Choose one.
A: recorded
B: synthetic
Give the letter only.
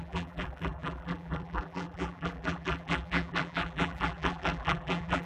B